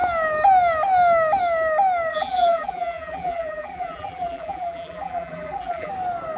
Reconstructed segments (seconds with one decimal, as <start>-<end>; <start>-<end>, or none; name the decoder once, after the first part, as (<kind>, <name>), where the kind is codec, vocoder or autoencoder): 2.1-5.9 (vocoder, BigVGAN v2)